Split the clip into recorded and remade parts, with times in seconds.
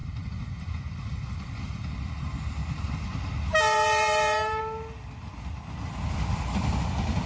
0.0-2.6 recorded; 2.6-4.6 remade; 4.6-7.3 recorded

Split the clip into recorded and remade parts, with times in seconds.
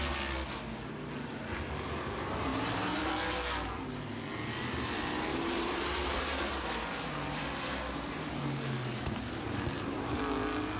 0.0-2.5 recorded; 2.5-3.1 remade; 3.1-5.3 recorded; 5.3-10.2 remade; 10.2-10.8 recorded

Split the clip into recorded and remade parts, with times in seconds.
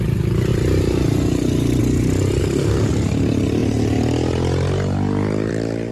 0.0-2.4 recorded; 2.4-2.9 remade; 2.9-5.9 recorded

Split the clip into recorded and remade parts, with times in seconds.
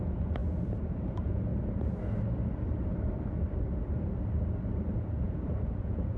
0.0-0.4 remade; 0.4-1.1 recorded; 1.1-1.5 remade; 1.5-5.0 recorded; 5.0-6.2 remade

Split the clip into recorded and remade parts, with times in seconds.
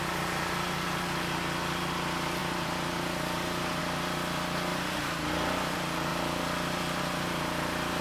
0.0-2.4 recorded; 2.4-3.8 remade; 3.8-4.7 recorded; 4.7-5.3 remade; 5.3-8.0 recorded